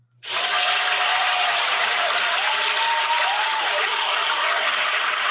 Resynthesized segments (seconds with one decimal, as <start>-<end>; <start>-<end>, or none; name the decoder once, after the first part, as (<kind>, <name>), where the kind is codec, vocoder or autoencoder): 1.1-4.0 (vocoder, BigVGAN v2)